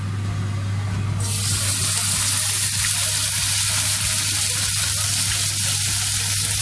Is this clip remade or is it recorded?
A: recorded